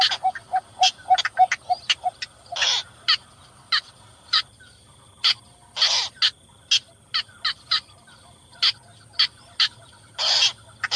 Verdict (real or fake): real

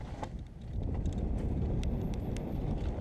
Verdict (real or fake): real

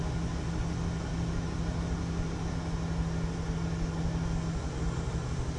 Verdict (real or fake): real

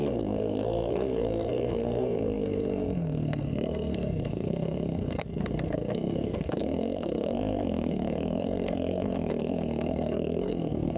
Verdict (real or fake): fake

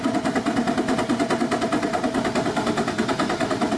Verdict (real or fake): real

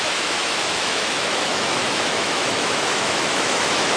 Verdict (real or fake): fake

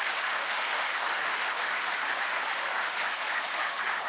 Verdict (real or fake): fake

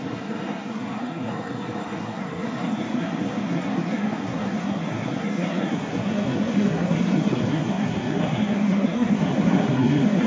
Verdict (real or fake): fake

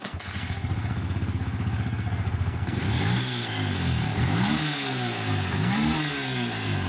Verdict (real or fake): fake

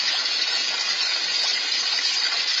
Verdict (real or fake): real